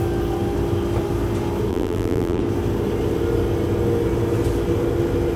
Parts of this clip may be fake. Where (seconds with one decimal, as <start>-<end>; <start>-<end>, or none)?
1.7-2.4